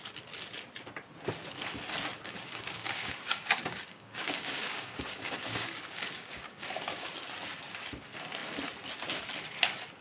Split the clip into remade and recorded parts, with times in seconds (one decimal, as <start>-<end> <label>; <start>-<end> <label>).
0.0-2.1 recorded; 2.1-7.1 remade; 7.1-10.0 recorded